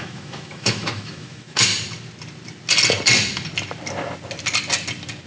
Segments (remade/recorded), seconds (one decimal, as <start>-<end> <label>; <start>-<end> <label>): 0.0-1.7 remade; 1.7-5.3 recorded